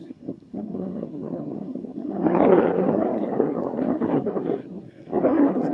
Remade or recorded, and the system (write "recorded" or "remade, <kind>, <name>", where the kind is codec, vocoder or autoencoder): remade, codec, SNAC